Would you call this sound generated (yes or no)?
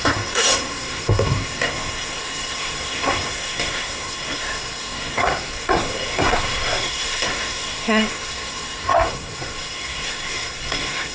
yes